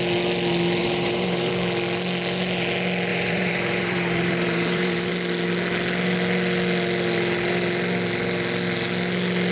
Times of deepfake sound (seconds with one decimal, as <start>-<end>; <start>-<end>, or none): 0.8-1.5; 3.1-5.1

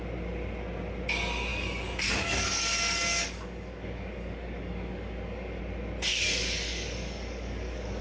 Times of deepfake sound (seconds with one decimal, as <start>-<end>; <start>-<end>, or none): 1.5-5.6; 6.1-8.0

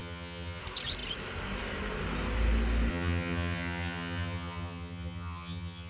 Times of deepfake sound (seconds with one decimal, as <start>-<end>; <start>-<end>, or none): 0.0-0.6; 2.9-5.9

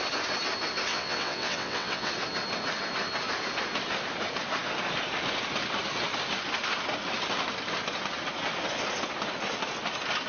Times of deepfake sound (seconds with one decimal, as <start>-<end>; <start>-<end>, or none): 0.9-2.1

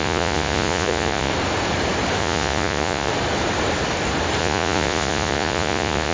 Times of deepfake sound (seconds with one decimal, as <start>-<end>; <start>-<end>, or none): 0.0-1.3; 2.2-3.1; 4.4-6.1